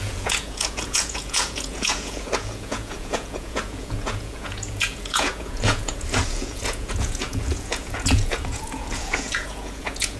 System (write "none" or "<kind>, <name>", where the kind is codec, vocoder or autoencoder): vocoder, Vocos